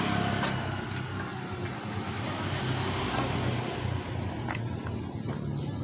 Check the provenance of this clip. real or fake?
real